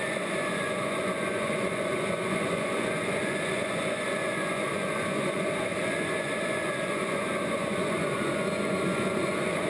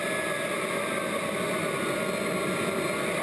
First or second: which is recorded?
second